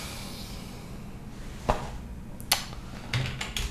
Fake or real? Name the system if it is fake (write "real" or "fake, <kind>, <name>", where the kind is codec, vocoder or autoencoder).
real